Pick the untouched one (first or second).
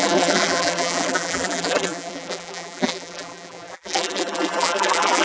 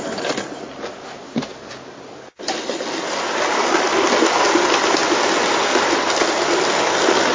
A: second